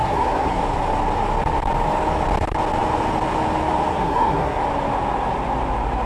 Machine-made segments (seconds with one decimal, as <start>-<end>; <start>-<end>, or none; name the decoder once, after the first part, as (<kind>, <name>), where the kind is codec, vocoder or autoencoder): 0.0-0.6 (codec, SNAC); 3.9-4.6